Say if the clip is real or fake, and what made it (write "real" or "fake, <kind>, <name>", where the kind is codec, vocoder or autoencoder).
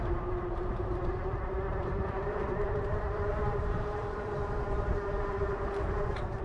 fake, vocoder, BigVGAN v2